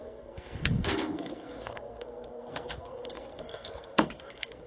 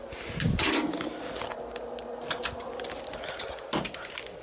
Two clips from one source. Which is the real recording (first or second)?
second